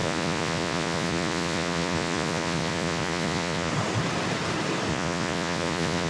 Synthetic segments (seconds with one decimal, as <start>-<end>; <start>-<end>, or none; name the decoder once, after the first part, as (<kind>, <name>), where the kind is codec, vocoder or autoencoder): 0.0-3.7 (vocoder, Vocos); 4.9-6.1